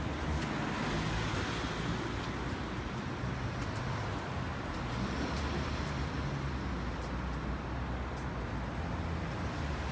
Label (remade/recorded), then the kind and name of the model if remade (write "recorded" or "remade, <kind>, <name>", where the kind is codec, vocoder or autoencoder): recorded